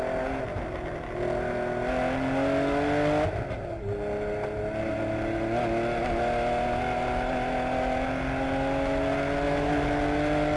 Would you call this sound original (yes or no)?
yes